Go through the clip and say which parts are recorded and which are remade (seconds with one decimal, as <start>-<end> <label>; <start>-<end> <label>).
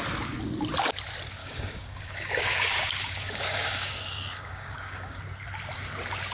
0.0-1.4 recorded; 1.4-5.2 remade; 5.2-6.3 recorded